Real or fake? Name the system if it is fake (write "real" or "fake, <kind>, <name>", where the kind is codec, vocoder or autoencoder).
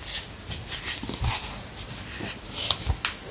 real